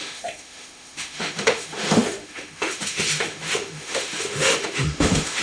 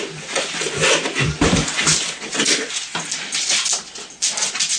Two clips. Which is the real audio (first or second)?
second